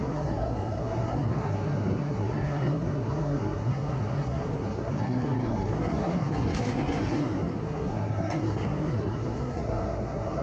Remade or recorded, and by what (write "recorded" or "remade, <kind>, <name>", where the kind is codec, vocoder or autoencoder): remade, codec, SNAC